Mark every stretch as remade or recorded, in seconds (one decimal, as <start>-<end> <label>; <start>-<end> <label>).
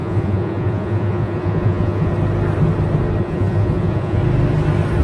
0.0-2.1 remade; 2.1-3.2 recorded; 3.2-4.2 remade; 4.2-5.0 recorded